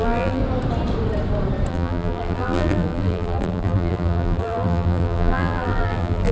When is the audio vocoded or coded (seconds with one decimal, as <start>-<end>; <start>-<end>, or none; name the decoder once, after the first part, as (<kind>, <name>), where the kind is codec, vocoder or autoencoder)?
0.0-0.4 (vocoder, BigVGAN v2); 1.7-6.3